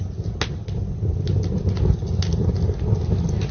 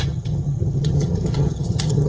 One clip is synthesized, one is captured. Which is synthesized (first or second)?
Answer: second